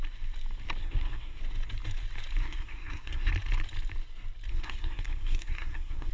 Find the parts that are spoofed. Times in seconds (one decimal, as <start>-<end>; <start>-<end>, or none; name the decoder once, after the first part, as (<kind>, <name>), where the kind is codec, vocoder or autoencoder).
0.8-1.4 (codec, SNAC); 2.4-3.3; 4.5-6.1